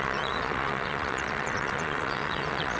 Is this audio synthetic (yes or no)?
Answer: yes